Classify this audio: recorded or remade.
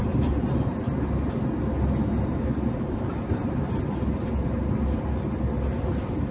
recorded